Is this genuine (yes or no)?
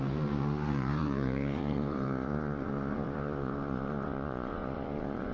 no